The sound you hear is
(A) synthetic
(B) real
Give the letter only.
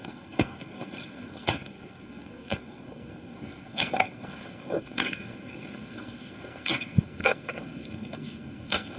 A